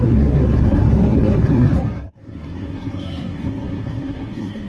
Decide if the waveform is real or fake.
fake